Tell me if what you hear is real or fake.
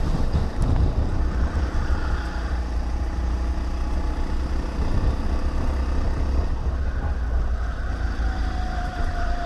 real